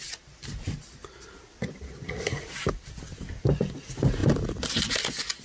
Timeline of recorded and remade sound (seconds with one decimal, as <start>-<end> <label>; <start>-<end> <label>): 0.0-5.4 recorded